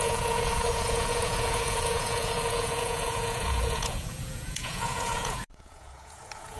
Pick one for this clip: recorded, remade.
remade